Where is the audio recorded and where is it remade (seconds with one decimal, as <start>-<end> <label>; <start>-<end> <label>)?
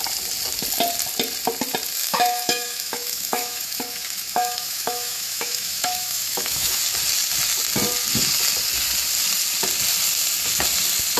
0.0-2.0 recorded; 2.0-6.8 remade; 6.8-11.2 recorded